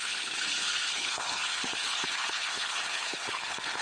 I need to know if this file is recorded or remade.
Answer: remade